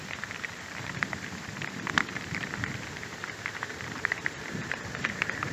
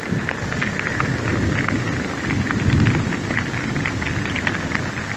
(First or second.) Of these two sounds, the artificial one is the first